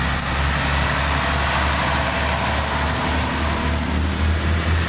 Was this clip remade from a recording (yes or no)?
no